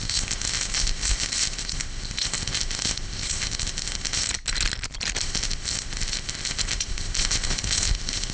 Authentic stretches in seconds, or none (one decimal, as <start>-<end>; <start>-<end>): 4.3-5.2